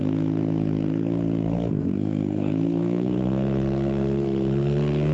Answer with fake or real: fake